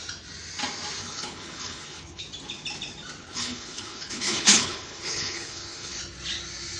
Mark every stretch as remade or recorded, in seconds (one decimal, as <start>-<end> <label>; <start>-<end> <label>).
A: 0.0-1.0 recorded; 1.0-2.2 remade; 2.2-3.2 recorded; 3.2-6.0 remade; 6.0-6.8 recorded